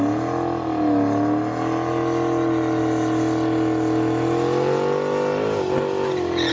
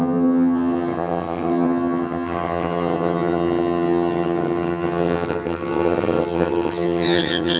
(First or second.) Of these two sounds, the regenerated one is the second